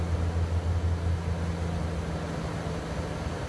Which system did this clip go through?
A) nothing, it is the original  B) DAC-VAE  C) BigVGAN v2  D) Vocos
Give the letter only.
A